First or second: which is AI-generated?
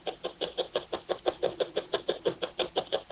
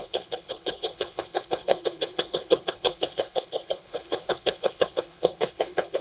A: second